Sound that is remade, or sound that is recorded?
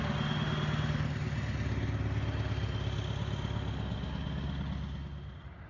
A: recorded